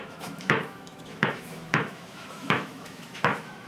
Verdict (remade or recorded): remade